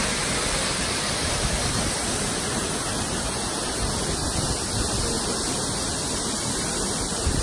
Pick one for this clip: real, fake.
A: real